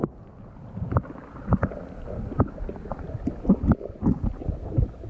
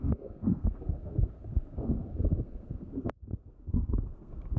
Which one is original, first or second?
first